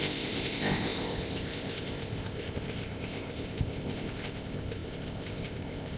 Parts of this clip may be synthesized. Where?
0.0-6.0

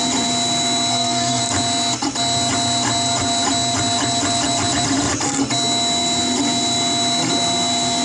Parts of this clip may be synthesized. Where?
0.9-1.4

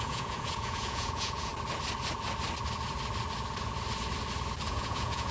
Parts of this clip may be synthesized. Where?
0.0-1.5; 4.7-5.3

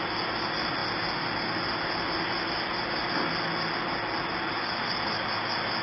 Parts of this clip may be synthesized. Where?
none

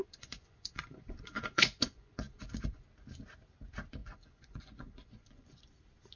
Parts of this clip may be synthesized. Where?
0.0-2.8; 4.0-5.6

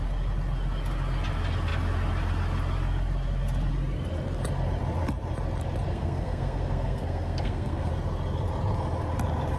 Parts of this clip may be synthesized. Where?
5.9-7.9

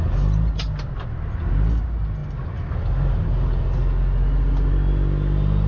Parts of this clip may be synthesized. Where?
none

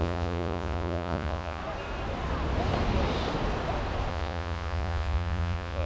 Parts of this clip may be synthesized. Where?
0.0-1.6; 4.1-5.9